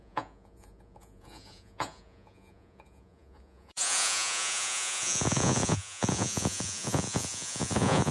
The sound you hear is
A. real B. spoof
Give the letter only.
B